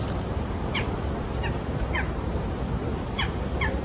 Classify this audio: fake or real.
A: fake